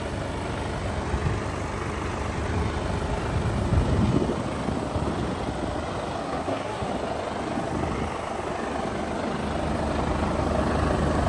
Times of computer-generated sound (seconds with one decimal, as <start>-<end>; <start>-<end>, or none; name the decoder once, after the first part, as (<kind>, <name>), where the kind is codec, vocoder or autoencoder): 6.2-6.9 (codec, SNAC)